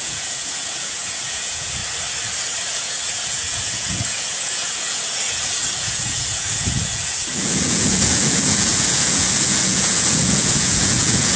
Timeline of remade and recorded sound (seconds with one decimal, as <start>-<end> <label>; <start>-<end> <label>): 0.0-1.8 remade; 1.8-2.7 recorded; 2.7-11.4 remade